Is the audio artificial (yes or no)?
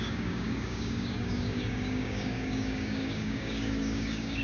yes